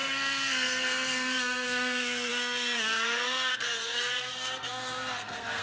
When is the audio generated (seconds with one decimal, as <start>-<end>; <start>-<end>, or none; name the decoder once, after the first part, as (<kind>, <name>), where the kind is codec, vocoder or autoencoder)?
0.0-5.6 (codec, SNAC)